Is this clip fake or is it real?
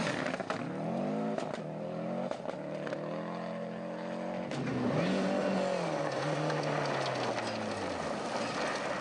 real